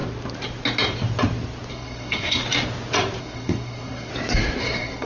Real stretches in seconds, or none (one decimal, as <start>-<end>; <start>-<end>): 0.0-1.7; 2.4-3.2; 4.1-4.6